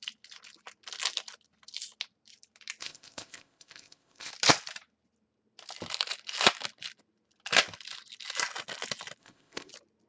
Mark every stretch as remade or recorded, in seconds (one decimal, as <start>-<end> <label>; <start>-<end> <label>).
0.0-2.8 recorded; 2.8-4.3 remade; 4.3-9.2 recorded; 9.2-9.7 remade; 9.7-10.1 recorded